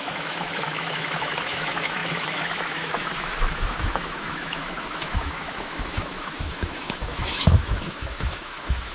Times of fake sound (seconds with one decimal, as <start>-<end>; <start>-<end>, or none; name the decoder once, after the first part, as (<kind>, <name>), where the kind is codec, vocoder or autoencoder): 0.0-8.9 (autoencoder, DAC-VAE)